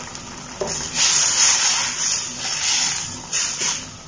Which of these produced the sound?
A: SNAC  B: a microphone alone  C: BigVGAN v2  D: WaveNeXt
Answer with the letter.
B